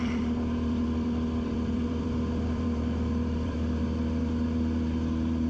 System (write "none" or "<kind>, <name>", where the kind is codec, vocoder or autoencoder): vocoder, BigVGAN v2